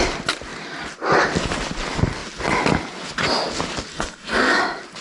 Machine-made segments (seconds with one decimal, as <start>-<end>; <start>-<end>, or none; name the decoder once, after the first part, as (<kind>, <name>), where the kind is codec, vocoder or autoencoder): 3.9-4.6 (codec, SNAC)